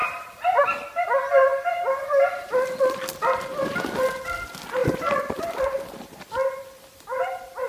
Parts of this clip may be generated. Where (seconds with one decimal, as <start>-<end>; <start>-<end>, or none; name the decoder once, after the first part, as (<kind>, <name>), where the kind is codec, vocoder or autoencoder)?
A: 4.8-6.2 (vocoder, BigVGAN v2)